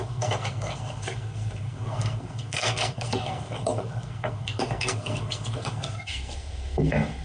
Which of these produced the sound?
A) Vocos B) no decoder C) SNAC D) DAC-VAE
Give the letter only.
C